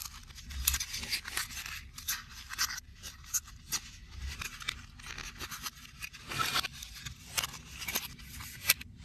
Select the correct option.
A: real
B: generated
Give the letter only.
A